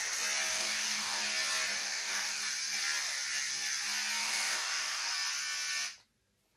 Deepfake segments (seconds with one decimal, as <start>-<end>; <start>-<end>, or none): 0.5-1.2; 1.8-2.4; 4.2-5.1

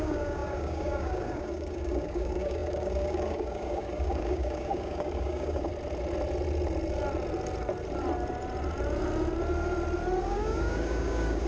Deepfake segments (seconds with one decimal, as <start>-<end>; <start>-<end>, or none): 0.0-5.7; 10.2-11.5